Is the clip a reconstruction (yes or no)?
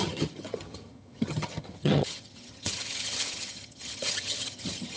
yes